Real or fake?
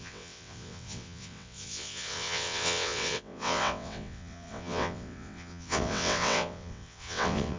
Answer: fake